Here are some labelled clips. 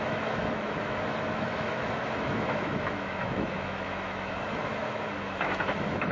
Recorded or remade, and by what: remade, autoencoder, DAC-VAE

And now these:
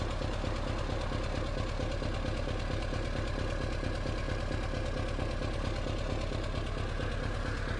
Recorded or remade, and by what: recorded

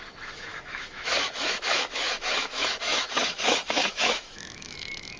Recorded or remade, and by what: remade, autoencoder, DAC-VAE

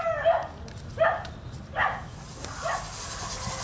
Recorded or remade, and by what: recorded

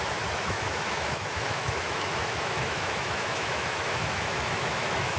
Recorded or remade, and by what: remade, autoencoder, DAC-VAE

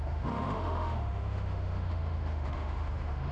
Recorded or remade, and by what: remade, autoencoder, DAC-VAE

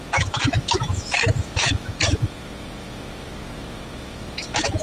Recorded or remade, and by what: remade, autoencoder, DAC-VAE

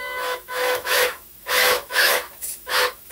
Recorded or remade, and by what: remade, autoencoder, DAC-VAE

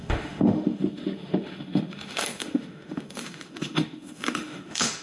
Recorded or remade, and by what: remade, autoencoder, DAC-VAE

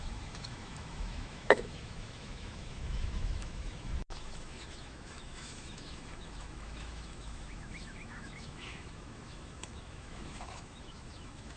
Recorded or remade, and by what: remade, autoencoder, DAC-VAE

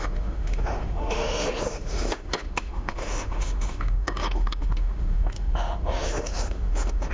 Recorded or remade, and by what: remade, autoencoder, DAC-VAE